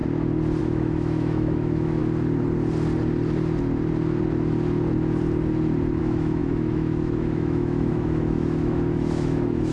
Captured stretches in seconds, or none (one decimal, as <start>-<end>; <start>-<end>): 0.0-0.6; 2.0-6.0